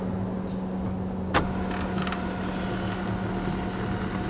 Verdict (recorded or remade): recorded